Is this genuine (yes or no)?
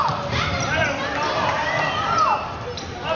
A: yes